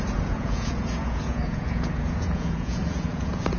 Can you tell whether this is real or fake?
fake